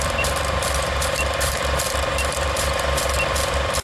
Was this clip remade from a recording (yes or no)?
yes